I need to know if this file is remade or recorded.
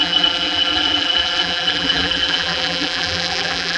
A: remade